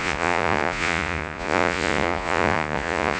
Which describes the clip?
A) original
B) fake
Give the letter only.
B